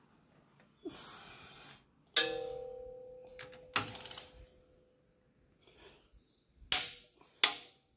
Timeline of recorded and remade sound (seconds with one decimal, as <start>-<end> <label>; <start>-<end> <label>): 0.0-8.0 recorded